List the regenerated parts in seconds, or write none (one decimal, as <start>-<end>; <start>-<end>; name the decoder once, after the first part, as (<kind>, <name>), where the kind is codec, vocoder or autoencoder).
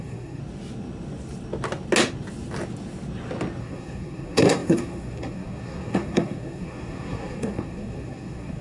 0.0-0.4 (codec, SNAC); 3.6-8.6